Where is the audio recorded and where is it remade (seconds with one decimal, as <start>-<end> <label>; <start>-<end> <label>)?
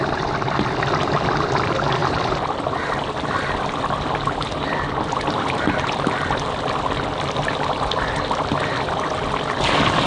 0.0-10.1 recorded